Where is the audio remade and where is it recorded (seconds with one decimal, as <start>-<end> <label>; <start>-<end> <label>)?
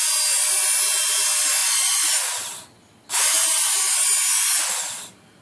0.0-5.4 recorded